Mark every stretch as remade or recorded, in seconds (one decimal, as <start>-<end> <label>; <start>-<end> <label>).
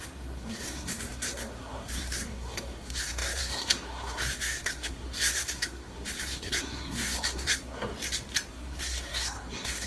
0.0-7.9 remade; 7.9-8.5 recorded; 8.5-9.9 remade